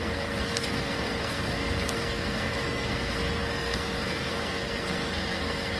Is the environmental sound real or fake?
fake